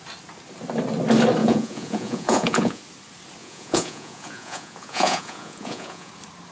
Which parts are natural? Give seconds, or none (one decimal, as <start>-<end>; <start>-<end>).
0.0-1.4; 2.8-3.4; 6.1-6.5